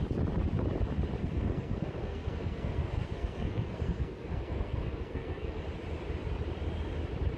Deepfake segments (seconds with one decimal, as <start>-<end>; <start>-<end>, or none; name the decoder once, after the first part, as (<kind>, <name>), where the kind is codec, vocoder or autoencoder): 1.2-5.6 (codec, SNAC)